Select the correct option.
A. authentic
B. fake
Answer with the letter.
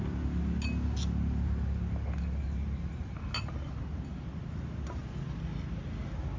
A